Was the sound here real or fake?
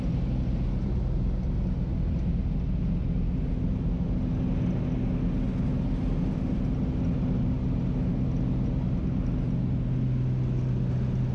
real